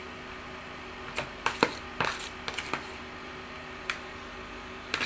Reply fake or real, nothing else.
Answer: real